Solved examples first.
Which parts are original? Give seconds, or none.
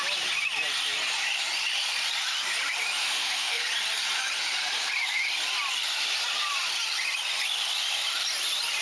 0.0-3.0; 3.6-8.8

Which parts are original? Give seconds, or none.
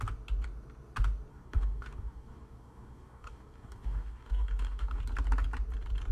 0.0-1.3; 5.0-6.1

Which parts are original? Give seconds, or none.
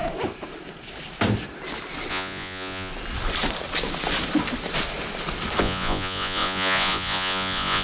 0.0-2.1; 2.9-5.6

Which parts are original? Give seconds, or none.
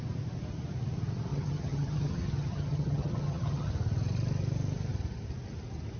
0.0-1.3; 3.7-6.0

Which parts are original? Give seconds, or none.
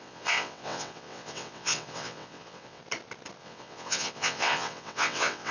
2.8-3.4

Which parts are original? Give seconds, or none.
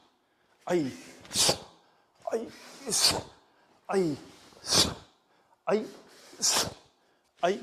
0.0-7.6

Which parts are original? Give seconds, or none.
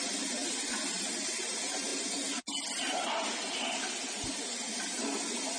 0.0-5.6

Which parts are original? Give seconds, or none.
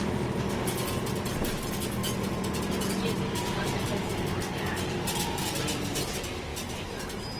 0.0-7.4